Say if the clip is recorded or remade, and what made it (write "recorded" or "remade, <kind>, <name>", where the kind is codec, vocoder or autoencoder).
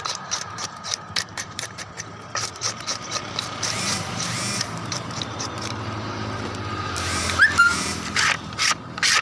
remade, vocoder, BigVGAN v2